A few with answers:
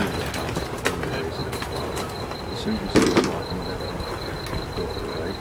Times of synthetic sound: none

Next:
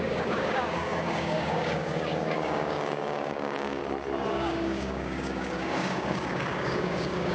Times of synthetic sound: 0.0-3.8 (codec, DAC); 4.3-7.3

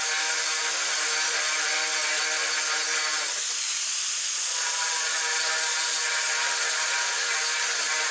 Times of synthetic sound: none

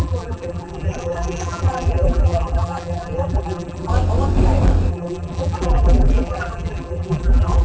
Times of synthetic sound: 0.0-3.9 (vocoder, BigVGAN v2); 4.9-7.6

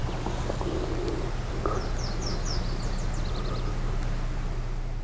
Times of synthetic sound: none

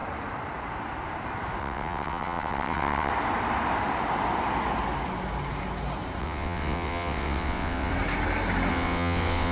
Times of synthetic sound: 1.6-3.1 (vocoder, WaveNeXt); 6.2-7.9; 8.7-9.5